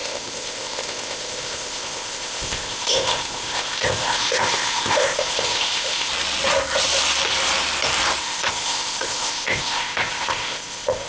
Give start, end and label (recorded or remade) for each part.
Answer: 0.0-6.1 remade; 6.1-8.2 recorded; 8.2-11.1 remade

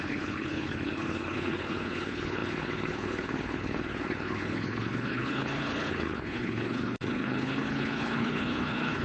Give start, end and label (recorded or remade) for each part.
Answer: 0.0-9.0 remade

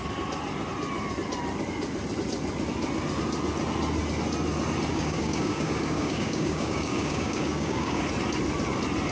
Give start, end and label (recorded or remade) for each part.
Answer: 0.0-4.9 recorded; 4.9-8.0 remade; 8.0-9.1 recorded

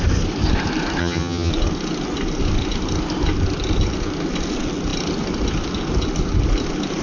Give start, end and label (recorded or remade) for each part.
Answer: 0.0-1.0 recorded; 1.0-1.5 remade; 1.5-7.0 recorded

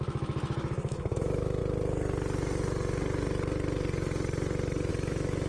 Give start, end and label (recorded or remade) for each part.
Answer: 0.0-1.6 remade; 1.6-4.9 recorded; 4.9-5.5 remade

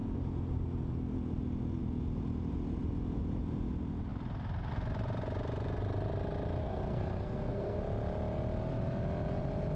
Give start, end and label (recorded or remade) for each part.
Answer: 0.0-6.6 recorded; 6.6-7.8 remade; 7.8-9.8 recorded